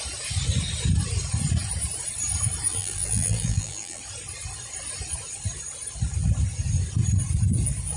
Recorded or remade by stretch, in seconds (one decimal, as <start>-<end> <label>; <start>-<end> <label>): 0.0-2.7 recorded; 2.7-4.0 remade; 4.0-8.0 recorded